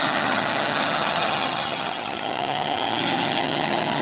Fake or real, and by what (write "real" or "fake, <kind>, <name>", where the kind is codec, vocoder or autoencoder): fake, vocoder, HiFi-GAN